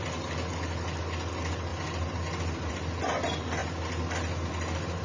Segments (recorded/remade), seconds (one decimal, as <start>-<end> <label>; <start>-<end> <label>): 0.0-5.0 recorded